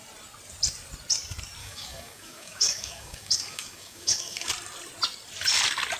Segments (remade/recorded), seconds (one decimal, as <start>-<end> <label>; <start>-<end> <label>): 0.0-1.6 recorded; 1.6-4.5 remade; 4.5-6.0 recorded